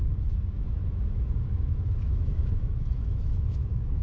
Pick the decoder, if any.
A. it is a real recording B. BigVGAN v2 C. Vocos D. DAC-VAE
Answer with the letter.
D